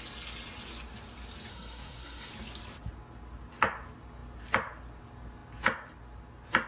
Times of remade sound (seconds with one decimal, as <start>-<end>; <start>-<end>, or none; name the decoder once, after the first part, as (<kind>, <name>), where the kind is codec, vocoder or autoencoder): 1.5-2.3 (codec, SNAC)